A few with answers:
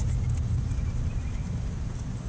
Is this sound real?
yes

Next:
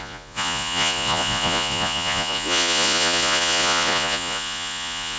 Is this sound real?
no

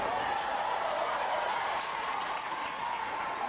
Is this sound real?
no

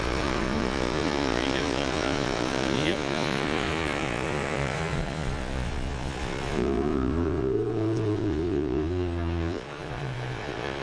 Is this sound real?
no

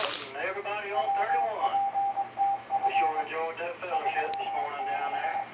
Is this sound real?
yes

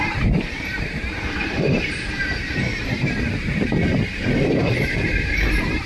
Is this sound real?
no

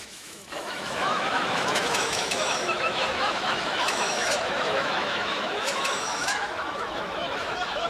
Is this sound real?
no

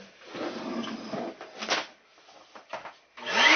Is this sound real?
yes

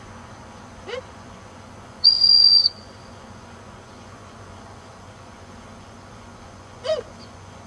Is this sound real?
no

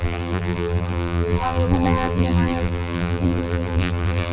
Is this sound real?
no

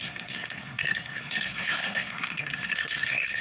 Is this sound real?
no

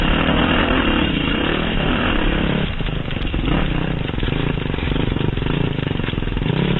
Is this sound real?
no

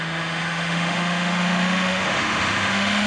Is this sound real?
no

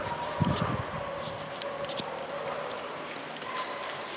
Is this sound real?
yes